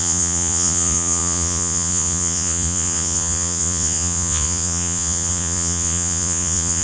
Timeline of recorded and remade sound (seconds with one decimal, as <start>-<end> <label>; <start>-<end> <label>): 0.0-6.8 remade